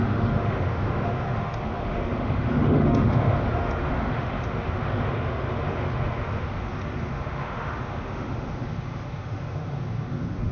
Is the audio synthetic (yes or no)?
yes